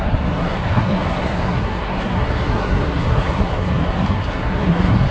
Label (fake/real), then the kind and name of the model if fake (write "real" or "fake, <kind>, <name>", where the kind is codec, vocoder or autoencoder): fake, codec, SNAC